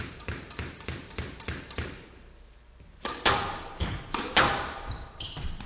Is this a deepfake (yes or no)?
yes